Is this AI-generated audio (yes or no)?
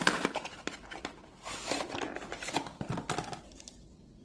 no